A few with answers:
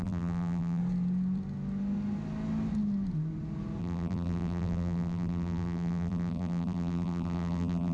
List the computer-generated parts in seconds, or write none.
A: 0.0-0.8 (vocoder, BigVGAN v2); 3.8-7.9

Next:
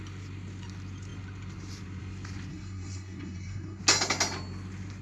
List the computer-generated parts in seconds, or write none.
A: 2.5-3.8 (codec, SNAC)

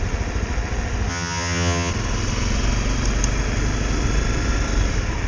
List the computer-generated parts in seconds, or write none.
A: 1.1-1.9 (vocoder, HiFi-GAN)

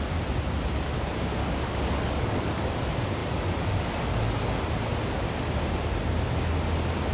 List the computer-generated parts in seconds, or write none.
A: 1.4-2.7 (codec, DAC)